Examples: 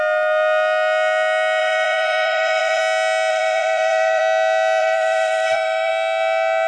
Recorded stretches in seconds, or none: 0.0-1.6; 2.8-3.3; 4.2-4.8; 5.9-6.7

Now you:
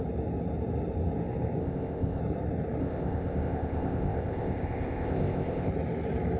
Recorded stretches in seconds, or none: 0.0-1.6; 2.2-2.8; 5.7-6.4